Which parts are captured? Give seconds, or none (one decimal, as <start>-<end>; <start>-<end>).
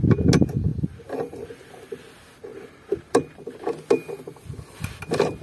0.0-0.7; 2.0-5.4